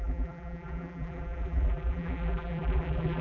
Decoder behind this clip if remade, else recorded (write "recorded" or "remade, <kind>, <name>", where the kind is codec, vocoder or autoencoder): remade, vocoder, BigVGAN v2